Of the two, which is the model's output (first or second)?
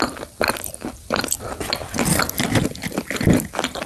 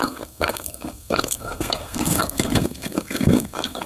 second